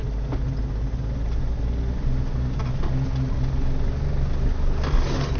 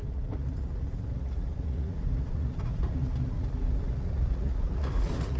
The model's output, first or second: second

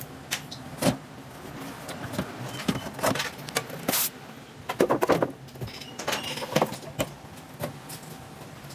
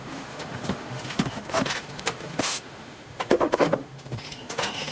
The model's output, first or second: second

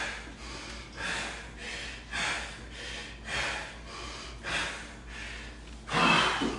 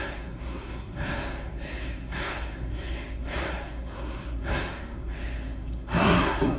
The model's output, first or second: second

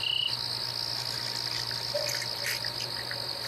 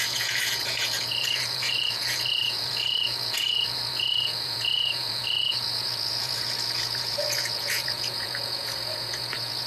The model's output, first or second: second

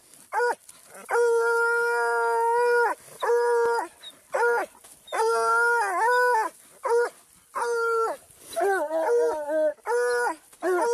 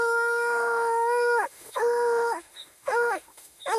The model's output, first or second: second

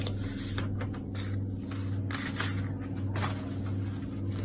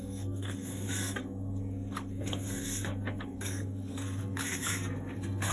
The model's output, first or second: second